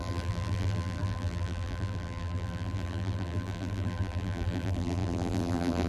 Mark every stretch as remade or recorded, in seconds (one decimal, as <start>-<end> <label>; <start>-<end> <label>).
0.0-5.9 remade